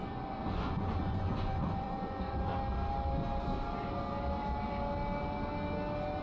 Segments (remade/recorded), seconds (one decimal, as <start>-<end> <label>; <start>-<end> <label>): 0.0-2.5 remade; 2.5-6.2 recorded